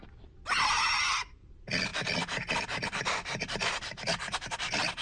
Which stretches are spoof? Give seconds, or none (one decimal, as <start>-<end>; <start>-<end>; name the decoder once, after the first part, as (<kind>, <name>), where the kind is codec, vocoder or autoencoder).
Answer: none